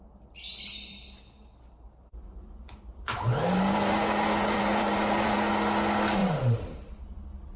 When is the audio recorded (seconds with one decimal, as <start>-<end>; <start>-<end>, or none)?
0.0-0.9; 5.5-6.2; 6.9-7.6